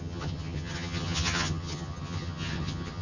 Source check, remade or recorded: remade